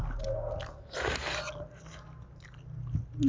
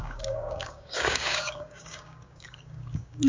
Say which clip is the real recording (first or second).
first